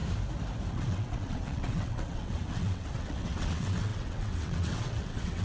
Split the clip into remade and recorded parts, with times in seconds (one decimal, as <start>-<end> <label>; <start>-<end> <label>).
0.0-0.7 recorded; 0.7-5.4 remade